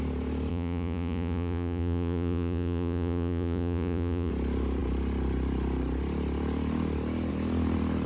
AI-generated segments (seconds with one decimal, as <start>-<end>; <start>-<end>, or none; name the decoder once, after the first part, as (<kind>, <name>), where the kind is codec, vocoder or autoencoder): 0.5-4.3 (vocoder, Vocos)